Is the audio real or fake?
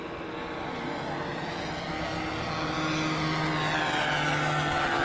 real